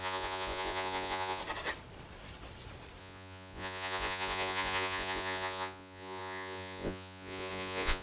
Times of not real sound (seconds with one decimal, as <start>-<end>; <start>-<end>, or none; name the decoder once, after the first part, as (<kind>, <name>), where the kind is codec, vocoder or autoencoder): 0.0-1.4 (vocoder, Vocos); 3.0-8.0